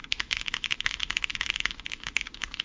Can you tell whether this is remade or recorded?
remade